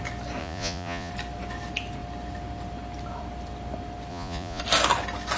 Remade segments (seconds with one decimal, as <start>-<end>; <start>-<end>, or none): 0.4-1.1; 4.1-4.6